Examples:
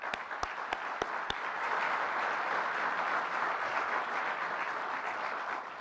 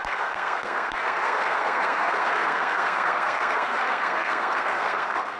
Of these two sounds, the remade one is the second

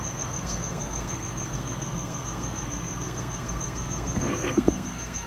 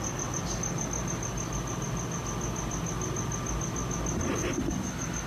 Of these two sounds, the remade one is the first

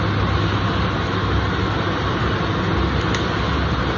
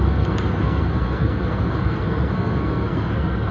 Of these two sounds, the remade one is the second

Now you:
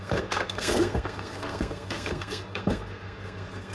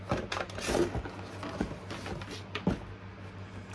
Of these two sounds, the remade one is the first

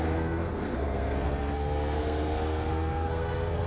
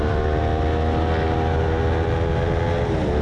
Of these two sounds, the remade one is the first